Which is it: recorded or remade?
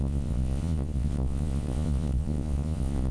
remade